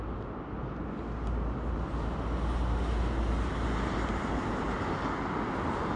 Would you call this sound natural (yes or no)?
yes